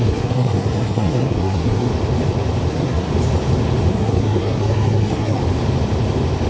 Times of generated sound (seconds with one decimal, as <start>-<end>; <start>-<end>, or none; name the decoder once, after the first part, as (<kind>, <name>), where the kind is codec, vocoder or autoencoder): 0.0-1.9 (codec, SNAC); 2.7-3.1; 3.9-5.4